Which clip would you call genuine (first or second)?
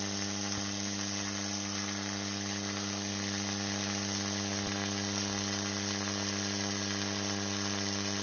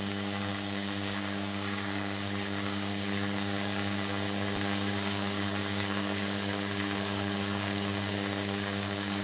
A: first